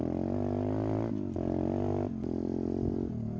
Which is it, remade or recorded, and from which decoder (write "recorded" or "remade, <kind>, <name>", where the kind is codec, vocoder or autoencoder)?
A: recorded